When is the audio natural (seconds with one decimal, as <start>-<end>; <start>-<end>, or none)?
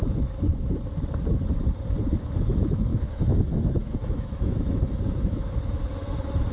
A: 0.5-2.2